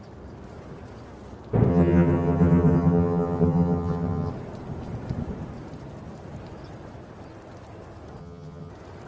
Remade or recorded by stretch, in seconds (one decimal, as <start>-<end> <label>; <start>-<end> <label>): 0.0-1.7 recorded; 1.7-4.3 remade; 4.3-8.2 recorded; 8.2-8.7 remade; 8.7-9.1 recorded

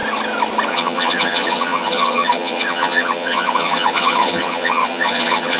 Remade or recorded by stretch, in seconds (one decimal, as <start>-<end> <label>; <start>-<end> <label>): 0.0-0.7 recorded; 0.7-5.6 remade

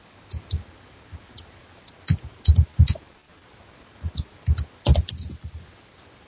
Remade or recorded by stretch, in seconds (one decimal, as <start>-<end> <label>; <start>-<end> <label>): 0.0-6.3 recorded

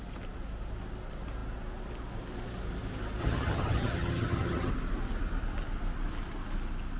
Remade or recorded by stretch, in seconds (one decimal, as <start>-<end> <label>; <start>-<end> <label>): 0.0-3.2 recorded; 3.2-4.7 remade; 4.7-7.0 recorded

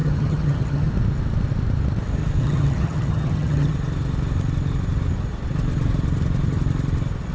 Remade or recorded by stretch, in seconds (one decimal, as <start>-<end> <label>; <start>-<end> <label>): 0.0-0.9 remade; 0.9-2.4 recorded; 2.4-3.7 remade; 3.7-7.3 recorded

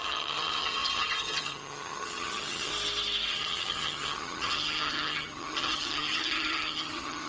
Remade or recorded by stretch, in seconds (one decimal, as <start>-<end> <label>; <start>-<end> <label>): 0.0-2.7 remade; 2.7-3.3 recorded; 3.3-7.3 remade